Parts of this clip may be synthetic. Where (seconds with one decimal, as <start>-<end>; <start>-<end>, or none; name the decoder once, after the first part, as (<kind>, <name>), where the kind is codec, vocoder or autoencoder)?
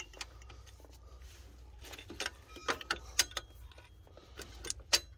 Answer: none